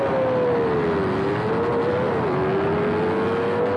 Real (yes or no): yes